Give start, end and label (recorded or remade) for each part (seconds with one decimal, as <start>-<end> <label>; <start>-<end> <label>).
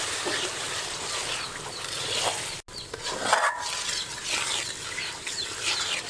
0.0-1.2 remade; 1.2-4.9 recorded; 4.9-6.1 remade